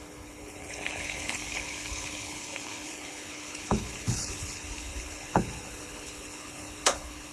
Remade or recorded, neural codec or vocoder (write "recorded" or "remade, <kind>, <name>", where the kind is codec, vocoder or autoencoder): remade, codec, HILCodec